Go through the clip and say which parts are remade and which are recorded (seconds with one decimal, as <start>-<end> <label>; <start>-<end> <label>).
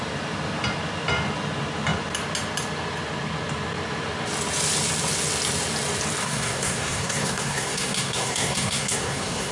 0.0-6.2 recorded; 6.2-9.5 remade